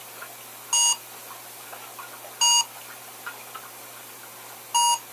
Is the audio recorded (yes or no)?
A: yes